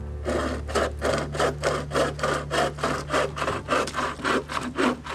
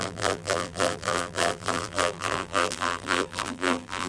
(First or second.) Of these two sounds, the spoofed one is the second